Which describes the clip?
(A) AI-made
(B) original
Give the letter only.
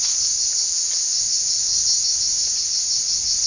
B